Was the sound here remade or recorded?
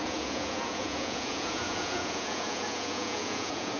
remade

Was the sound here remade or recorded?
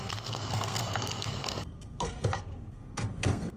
remade